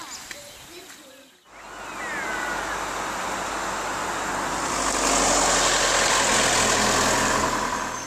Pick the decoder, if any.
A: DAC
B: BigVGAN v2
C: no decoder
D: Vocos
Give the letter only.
C